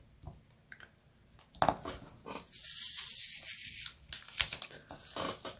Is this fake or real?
real